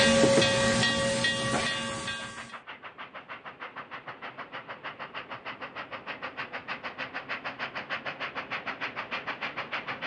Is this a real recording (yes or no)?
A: yes